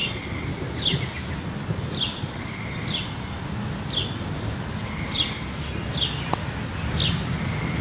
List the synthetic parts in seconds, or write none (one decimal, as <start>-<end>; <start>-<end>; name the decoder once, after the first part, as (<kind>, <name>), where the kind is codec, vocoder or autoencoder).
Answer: none